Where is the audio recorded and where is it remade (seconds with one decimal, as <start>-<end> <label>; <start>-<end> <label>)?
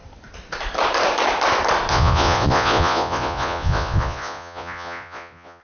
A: 0.0-1.9 recorded; 1.9-5.6 remade